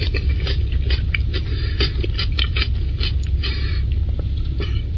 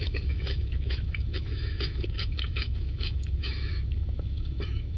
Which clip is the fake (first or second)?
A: second